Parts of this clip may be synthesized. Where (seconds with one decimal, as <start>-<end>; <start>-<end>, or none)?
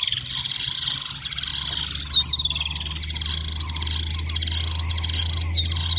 none